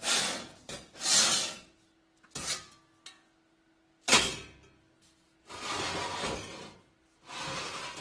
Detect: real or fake real